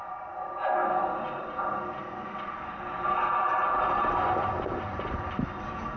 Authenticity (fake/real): real